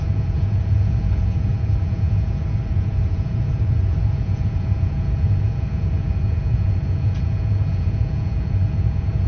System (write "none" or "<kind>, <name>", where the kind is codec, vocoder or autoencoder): vocoder, Vocos